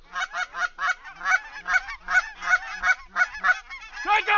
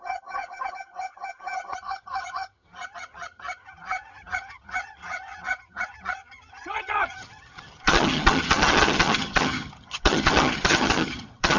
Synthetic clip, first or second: second